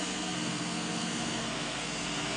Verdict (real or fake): fake